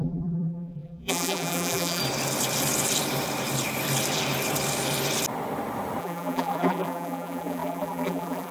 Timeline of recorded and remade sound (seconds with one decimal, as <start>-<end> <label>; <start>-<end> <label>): 0.0-2.0 remade; 2.0-6.0 recorded; 6.0-8.5 remade